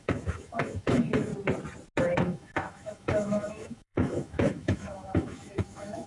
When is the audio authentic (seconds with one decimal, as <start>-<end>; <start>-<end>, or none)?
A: 1.3-2.0